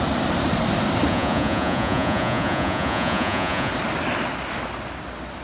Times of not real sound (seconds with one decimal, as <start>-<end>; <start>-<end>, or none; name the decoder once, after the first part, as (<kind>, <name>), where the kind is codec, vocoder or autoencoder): 1.1-3.7 (vocoder, Vocos)